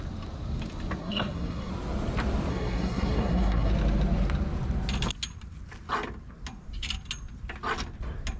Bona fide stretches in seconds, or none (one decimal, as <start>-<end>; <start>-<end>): 0.0-1.0; 1.7-2.5; 3.7-8.4